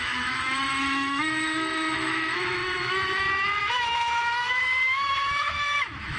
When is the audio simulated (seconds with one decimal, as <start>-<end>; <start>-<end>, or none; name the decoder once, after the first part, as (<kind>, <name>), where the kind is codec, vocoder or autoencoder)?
0.0-6.2 (autoencoder, DAC-VAE)